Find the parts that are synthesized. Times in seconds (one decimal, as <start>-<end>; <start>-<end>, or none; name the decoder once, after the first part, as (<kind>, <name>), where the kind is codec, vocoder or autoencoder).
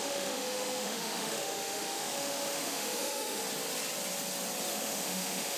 0.0-3.4 (autoencoder, DAC-VAE); 4.7-5.6